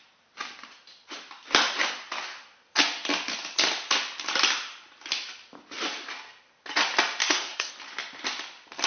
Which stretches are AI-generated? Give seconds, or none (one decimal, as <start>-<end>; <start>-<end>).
7.2-7.7